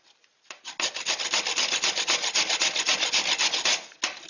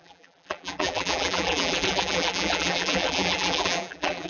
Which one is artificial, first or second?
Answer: second